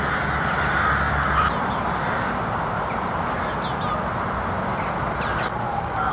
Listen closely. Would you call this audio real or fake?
real